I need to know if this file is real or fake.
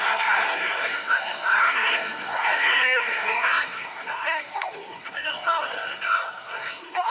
fake